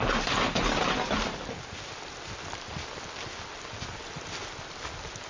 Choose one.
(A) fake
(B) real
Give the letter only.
B